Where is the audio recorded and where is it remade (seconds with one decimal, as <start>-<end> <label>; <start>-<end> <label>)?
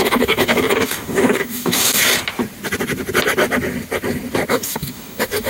0.0-2.0 remade; 2.0-4.5 recorded; 4.5-5.5 remade